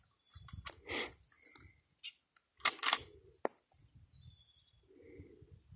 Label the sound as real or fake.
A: real